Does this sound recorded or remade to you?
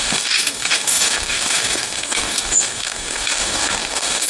remade